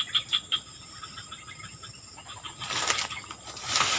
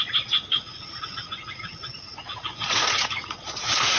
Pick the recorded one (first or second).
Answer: first